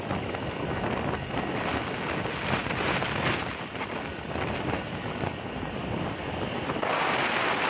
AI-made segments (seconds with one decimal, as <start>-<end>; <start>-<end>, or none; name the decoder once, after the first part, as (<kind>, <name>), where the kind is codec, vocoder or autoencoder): none